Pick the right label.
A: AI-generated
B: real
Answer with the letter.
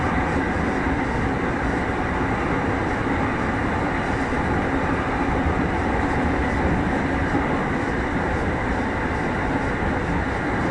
A